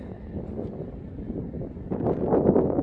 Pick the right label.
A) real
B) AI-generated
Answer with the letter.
A